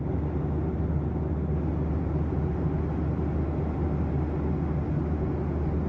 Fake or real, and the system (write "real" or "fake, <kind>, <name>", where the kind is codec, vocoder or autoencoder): real